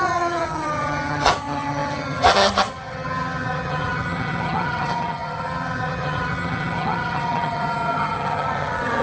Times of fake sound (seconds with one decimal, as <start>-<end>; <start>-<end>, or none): 0.0-9.0